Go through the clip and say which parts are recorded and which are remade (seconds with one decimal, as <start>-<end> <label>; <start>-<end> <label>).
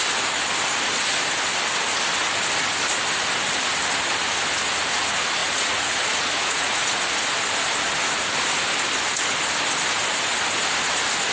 0.0-5.4 recorded; 5.4-7.0 remade; 7.0-11.3 recorded